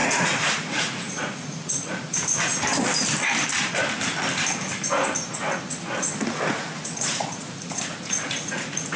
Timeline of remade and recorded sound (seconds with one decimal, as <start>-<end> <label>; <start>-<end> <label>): 0.0-2.5 remade; 2.5-6.3 recorded; 6.3-9.0 remade